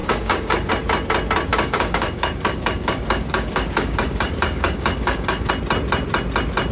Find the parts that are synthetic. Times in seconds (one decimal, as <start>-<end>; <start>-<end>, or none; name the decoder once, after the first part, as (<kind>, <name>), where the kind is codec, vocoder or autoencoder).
0.0-0.7 (codec, DAC); 1.5-5.5